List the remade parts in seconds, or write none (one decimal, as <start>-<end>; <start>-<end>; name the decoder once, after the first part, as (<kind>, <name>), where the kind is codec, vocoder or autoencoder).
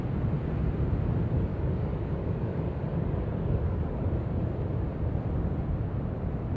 1.5-4.4 (codec, DAC)